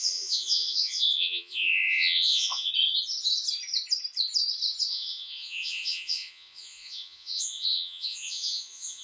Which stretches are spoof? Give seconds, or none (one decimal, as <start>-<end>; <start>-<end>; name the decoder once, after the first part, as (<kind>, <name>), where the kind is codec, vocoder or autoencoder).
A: 0.0-2.7 (vocoder, Vocos); 4.9-9.0